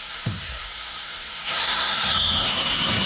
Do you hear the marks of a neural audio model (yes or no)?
yes